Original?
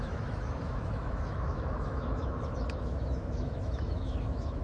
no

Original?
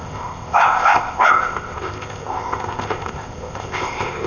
no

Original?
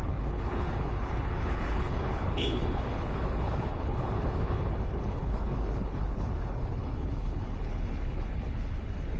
no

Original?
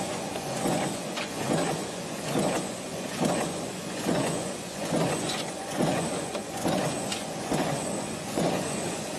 no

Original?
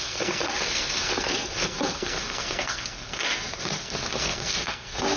no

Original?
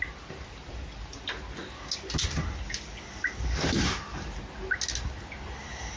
yes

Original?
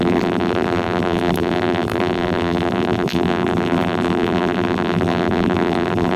no